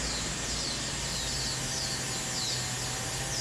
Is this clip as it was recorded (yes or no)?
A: yes